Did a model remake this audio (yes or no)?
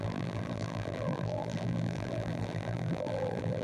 yes